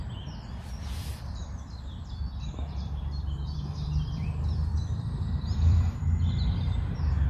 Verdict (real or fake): fake